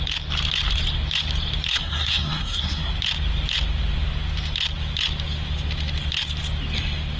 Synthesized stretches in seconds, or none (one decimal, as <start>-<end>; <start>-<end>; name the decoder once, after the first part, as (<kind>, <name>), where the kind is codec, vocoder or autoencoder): 1.7-2.9 (codec, SNAC)